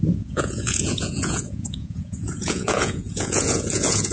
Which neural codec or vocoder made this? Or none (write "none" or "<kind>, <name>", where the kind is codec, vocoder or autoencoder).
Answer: vocoder, Vocos